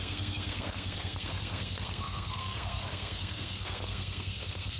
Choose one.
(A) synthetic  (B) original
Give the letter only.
A